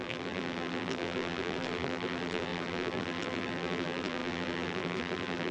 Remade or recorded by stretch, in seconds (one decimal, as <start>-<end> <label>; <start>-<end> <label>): 0.0-5.5 remade